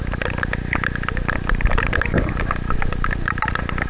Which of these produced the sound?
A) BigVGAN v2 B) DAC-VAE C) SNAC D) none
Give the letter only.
D